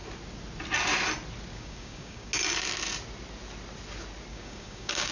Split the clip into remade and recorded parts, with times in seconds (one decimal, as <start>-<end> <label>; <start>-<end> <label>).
0.0-1.5 recorded; 1.5-2.3 remade; 2.3-4.3 recorded; 4.3-5.1 remade